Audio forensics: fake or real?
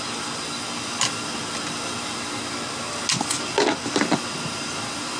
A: real